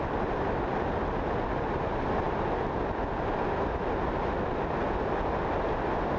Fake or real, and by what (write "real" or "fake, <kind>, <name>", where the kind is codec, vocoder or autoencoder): real